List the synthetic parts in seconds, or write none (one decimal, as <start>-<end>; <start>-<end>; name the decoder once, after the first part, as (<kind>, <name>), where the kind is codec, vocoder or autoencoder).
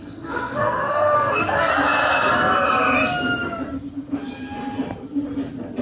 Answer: 0.0-1.7 (codec, SNAC)